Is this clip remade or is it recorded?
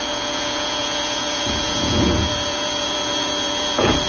remade